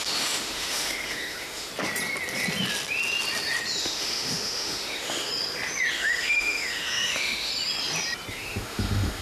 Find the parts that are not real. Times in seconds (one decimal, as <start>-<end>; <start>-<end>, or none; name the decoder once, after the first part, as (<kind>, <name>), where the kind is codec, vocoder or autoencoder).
0.0-1.7 (autoencoder, DAC-VAE); 3.8-5.3; 5.9-7.5; 8.3-9.2

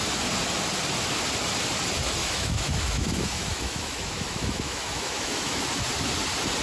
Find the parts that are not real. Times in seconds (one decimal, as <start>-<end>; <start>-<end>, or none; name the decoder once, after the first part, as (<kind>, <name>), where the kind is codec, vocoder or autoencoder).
2.2-5.6 (autoencoder, DAC-VAE)

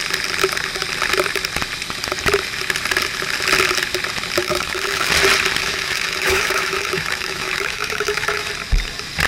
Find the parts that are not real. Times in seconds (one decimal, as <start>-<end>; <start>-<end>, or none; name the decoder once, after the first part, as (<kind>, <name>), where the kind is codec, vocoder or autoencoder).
4.4-5.1 (autoencoder, DAC-VAE); 5.6-8.5

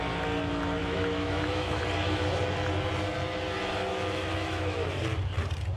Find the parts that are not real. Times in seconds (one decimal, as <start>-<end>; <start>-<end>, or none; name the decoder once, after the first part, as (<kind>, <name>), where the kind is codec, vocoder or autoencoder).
0.8-1.8 (autoencoder, DAC-VAE); 3.9-5.0